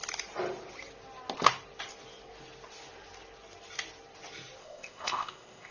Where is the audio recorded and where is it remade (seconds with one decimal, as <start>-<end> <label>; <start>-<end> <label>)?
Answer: 0.0-4.6 recorded; 4.6-5.7 remade